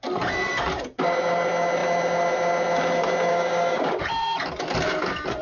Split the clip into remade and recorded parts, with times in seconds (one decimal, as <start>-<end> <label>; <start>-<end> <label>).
0.0-3.3 recorded; 3.3-4.0 remade; 4.0-5.4 recorded